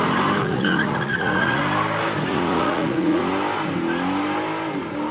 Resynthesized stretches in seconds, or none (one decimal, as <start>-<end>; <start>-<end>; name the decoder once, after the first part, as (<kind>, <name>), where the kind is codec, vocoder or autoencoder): 0.4-1.6 (vocoder, Vocos); 2.3-3.2